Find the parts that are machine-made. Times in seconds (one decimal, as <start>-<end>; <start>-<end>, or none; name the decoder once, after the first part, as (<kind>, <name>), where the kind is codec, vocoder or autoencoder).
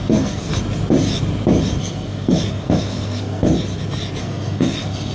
0.0-0.5 (codec, SNAC); 1.8-3.5; 4.2-5.1